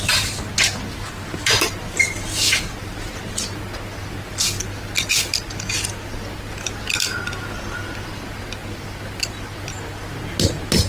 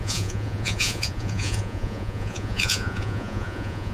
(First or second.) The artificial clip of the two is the second